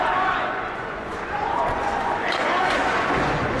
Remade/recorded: remade